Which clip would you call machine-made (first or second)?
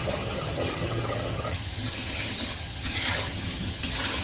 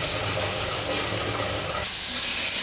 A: first